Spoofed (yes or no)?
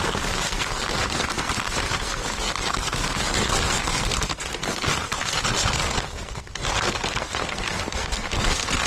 yes